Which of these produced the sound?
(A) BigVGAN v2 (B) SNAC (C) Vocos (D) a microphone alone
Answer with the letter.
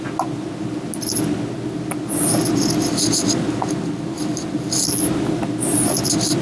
D